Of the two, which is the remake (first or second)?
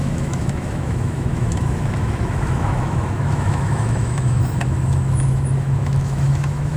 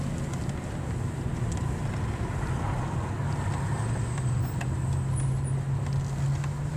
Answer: first